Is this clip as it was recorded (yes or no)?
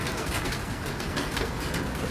no